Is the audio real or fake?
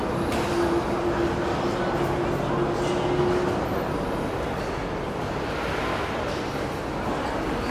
real